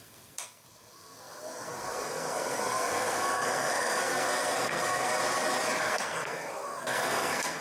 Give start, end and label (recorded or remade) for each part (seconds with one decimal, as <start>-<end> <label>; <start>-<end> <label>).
0.0-5.2 remade; 5.2-5.8 recorded; 5.8-7.6 remade